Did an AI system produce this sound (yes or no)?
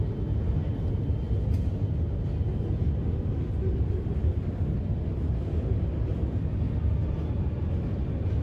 no